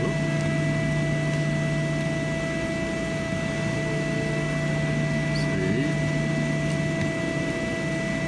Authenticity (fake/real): real